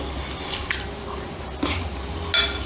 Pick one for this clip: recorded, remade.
recorded